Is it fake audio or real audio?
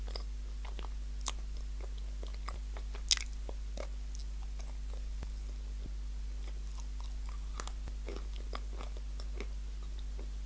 real